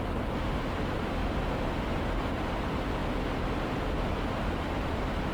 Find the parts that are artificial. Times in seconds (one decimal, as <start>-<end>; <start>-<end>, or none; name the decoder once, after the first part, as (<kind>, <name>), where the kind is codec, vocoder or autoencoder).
0.0-1.2 (vocoder, BigVGAN v2); 1.7-3.0; 4.6-5.3